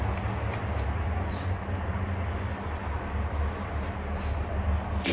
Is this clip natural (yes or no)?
yes